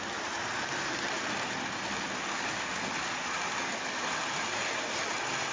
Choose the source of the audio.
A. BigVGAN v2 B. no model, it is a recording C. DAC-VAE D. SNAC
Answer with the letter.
B